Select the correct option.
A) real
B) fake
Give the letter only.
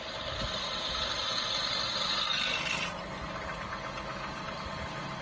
A